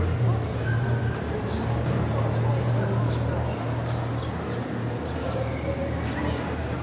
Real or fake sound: real